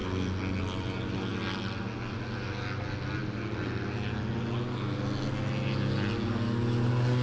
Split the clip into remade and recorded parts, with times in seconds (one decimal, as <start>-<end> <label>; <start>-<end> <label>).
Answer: 0.0-7.2 recorded